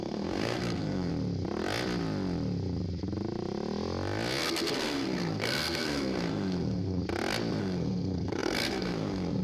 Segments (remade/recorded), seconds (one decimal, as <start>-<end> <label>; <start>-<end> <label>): 0.0-1.1 remade; 1.1-4.4 recorded; 4.4-7.0 remade; 7.0-7.6 recorded; 7.6-9.4 remade